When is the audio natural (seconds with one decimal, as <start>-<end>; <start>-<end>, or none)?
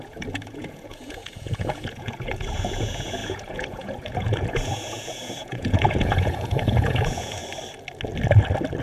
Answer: 7.4-8.8